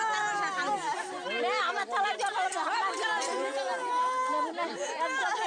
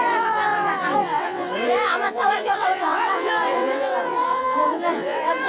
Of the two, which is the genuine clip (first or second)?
first